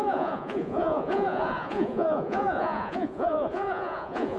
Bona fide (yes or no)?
no